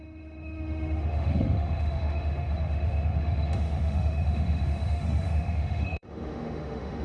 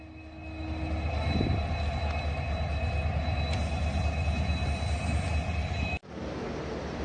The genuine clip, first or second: second